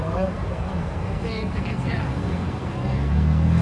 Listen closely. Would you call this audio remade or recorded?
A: remade